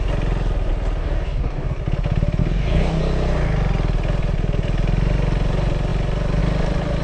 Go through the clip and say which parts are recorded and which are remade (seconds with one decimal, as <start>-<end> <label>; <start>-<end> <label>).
0.0-1.0 recorded; 1.0-1.8 remade; 1.8-2.4 recorded; 2.4-3.0 remade; 3.0-7.0 recorded